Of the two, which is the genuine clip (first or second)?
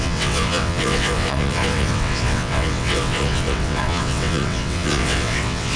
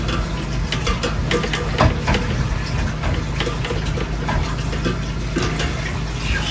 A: second